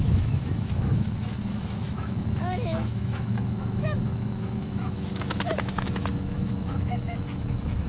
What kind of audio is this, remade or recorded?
remade